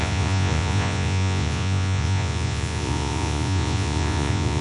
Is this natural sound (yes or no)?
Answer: no